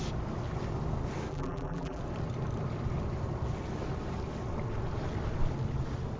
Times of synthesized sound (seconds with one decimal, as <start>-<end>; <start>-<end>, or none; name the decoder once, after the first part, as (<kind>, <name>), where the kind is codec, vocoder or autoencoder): 1.3-2.0 (vocoder, BigVGAN v2)